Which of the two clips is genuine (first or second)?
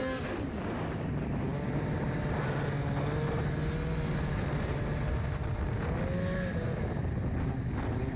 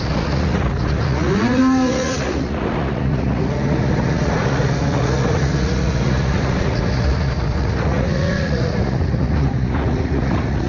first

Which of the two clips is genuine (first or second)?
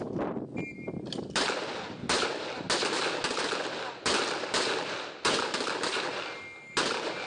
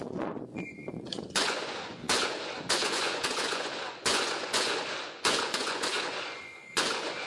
first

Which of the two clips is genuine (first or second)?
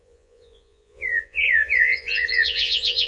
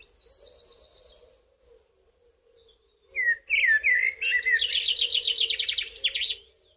second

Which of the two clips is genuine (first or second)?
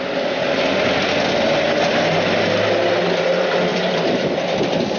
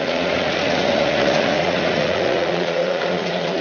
first